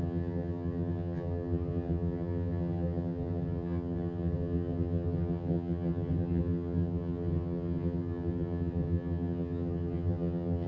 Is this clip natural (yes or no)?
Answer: no